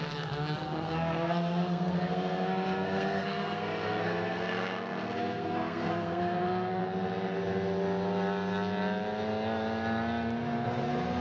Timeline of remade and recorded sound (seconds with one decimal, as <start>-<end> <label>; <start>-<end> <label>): 0.0-6.8 remade; 6.8-11.2 recorded